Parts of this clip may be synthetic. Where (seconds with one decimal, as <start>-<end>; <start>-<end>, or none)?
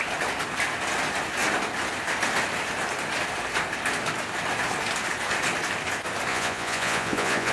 6.3-7.5